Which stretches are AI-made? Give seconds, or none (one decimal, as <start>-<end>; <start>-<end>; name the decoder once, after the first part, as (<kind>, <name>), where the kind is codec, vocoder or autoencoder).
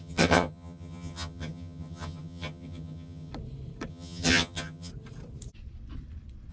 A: 0.0-3.3 (vocoder, HiFi-GAN); 3.9-4.9